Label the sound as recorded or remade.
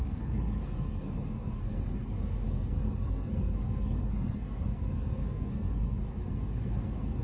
remade